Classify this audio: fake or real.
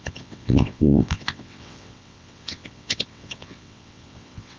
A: fake